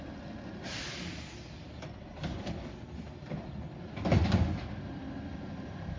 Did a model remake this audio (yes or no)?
no